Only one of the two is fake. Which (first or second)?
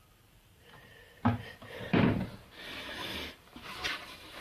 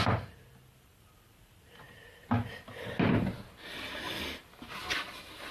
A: first